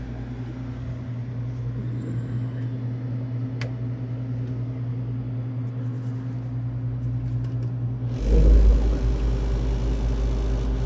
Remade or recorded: recorded